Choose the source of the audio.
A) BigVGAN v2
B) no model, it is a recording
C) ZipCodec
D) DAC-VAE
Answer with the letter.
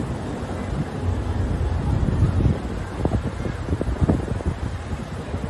B